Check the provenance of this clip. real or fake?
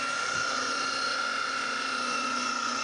fake